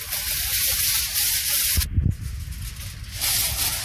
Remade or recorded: recorded